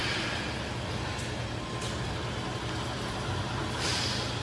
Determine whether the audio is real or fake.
real